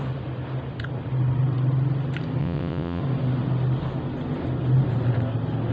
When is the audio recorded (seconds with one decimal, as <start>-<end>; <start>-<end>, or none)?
0.0-2.4; 3.0-5.7